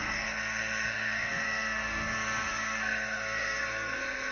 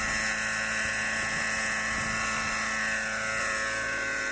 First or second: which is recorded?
second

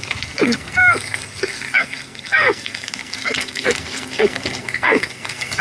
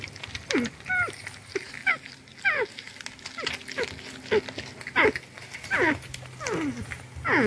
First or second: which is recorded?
second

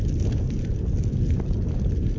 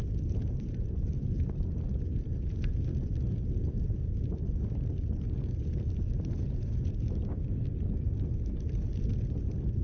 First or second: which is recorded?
first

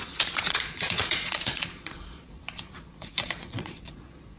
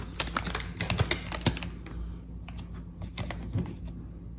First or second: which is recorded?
second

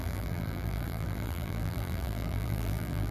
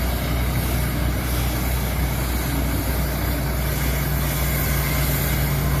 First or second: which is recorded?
second